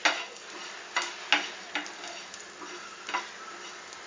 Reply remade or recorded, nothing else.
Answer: recorded